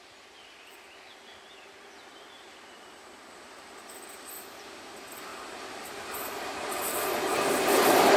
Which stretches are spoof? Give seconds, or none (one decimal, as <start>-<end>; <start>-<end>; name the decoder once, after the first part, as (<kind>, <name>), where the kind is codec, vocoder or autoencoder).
5.3-6.7 (vocoder, BigVGAN v2)